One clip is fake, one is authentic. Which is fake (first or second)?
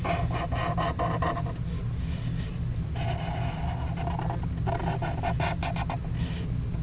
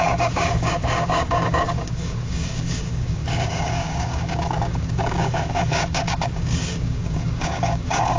second